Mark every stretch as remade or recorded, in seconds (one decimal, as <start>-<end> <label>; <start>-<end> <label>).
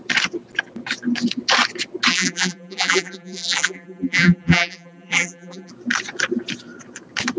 0.0-2.1 recorded; 2.1-5.7 remade; 5.7-7.4 recorded